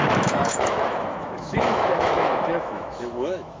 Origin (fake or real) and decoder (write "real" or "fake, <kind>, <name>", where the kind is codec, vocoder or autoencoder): fake, autoencoder, DAC-VAE